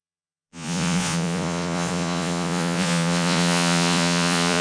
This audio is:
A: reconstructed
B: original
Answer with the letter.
A